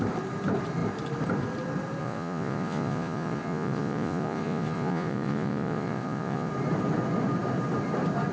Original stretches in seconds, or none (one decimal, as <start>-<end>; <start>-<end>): 0.0-2.0; 6.5-8.3